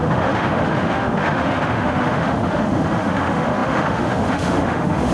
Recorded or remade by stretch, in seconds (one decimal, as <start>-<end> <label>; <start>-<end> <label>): 0.0-5.1 remade